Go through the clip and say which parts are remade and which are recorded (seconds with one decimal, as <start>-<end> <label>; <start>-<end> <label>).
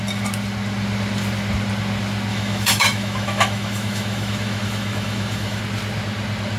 0.0-2.3 recorded; 2.3-5.6 remade; 5.6-6.6 recorded